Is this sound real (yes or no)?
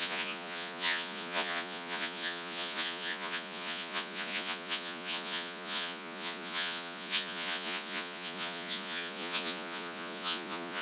no